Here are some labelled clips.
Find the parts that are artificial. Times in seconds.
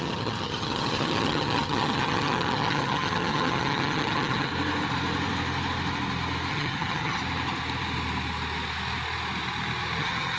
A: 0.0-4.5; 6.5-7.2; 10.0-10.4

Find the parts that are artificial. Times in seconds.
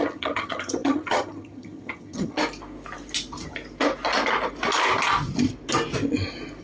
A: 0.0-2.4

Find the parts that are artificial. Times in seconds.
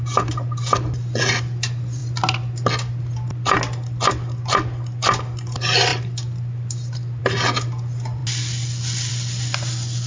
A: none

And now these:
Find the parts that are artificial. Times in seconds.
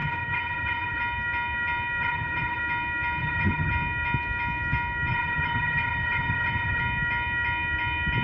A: 0.0-1.0; 2.0-2.6; 3.2-3.7; 5.1-6.8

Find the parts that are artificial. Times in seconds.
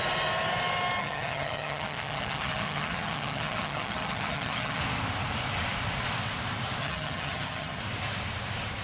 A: 1.0-4.8; 6.8-7.8